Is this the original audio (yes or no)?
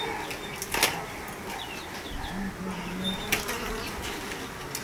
yes